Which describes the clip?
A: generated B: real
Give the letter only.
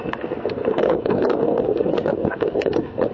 A